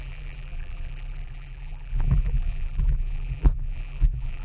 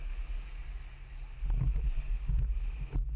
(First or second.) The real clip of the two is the second